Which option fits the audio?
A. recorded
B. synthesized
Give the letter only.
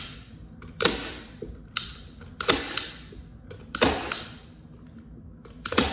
A